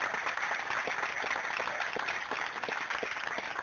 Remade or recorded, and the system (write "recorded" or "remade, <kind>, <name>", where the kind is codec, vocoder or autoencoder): recorded